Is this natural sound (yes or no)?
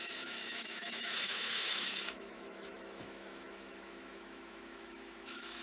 no